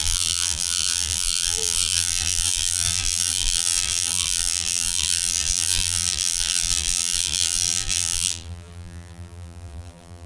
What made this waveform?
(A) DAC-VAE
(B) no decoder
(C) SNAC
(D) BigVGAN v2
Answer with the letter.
D